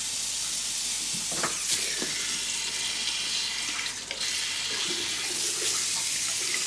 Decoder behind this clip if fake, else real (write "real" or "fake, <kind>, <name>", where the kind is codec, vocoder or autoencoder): real